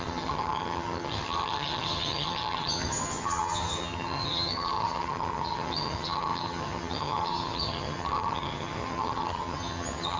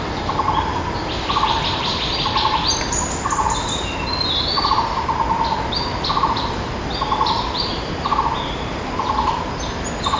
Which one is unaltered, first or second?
second